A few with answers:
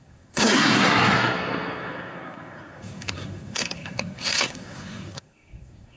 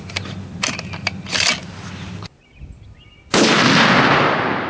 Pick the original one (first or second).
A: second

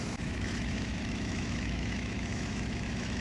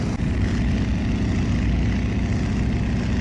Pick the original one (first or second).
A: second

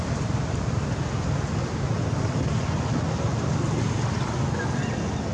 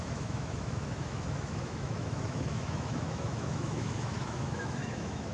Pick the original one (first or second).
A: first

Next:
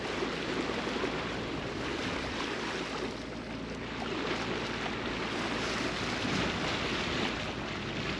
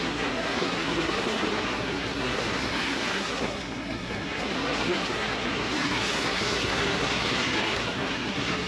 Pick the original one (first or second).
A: first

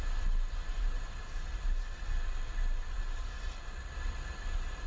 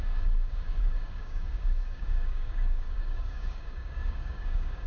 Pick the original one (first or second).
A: first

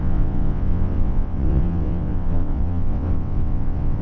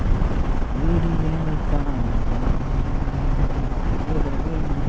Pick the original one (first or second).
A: second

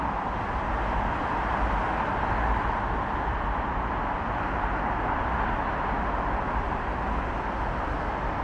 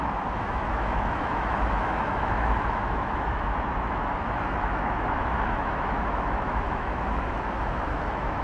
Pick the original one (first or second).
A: first